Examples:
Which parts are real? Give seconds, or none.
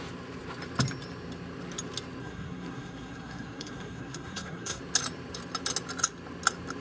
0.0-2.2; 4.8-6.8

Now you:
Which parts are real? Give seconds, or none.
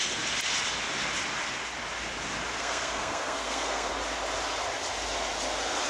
0.0-2.6; 3.9-5.9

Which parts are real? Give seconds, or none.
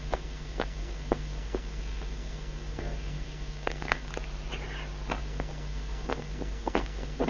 4.1-5.2